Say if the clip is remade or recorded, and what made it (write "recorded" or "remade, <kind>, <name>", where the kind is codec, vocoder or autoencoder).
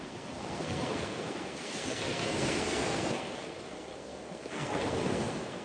remade, codec, SNAC